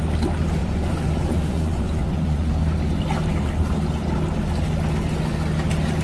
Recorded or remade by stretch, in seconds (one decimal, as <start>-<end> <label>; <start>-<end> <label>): 0.0-0.6 recorded; 0.6-2.5 remade; 2.5-6.0 recorded